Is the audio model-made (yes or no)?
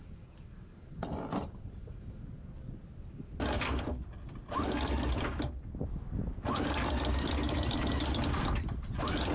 no